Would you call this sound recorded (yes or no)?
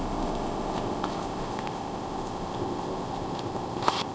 no